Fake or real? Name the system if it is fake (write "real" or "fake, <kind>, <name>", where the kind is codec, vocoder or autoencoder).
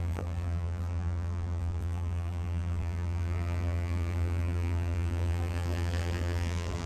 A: fake, vocoder, BigVGAN v2